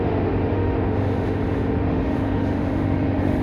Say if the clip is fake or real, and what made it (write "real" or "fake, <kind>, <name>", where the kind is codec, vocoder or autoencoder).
fake, autoencoder, DAC-VAE